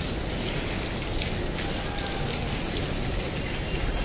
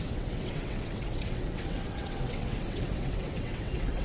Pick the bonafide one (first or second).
first